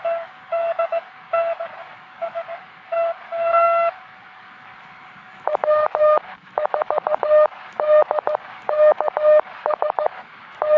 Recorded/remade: remade